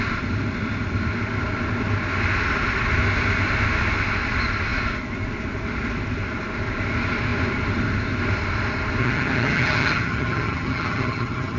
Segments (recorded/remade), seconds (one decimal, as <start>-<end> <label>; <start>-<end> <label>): 0.0-9.0 recorded; 9.0-11.6 remade